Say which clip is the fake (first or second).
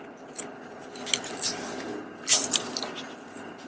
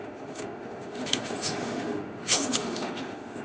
second